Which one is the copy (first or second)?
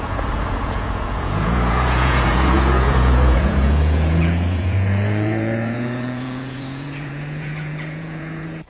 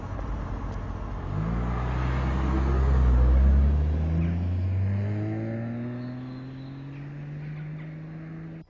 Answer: first